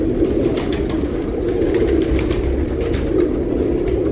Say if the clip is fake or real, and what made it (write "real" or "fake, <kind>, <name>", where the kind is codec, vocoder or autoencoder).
real